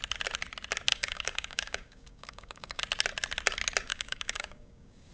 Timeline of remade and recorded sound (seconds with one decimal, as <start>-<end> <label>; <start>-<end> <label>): 0.0-0.9 recorded; 0.9-2.8 remade; 2.8-3.9 recorded; 3.9-5.1 remade